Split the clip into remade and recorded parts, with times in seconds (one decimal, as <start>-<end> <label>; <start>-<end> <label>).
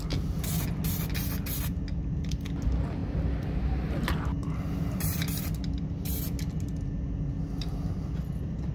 0.0-8.7 recorded